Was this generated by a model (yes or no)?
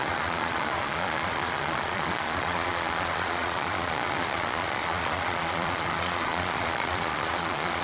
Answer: yes